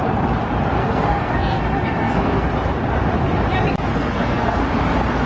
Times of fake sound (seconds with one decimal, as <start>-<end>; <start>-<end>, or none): 0.8-1.6; 2.0-2.5; 3.9-4.6